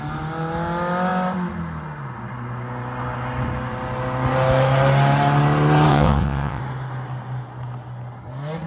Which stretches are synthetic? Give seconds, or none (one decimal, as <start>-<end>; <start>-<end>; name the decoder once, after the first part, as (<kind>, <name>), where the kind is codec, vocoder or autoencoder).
5.9-6.6 (vocoder, WaveNeXt)